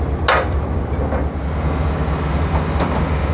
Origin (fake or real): real